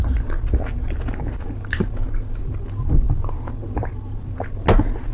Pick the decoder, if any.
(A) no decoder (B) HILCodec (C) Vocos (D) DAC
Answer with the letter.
A